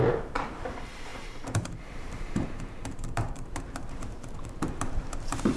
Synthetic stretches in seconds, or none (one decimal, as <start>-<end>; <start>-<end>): 0.0-5.6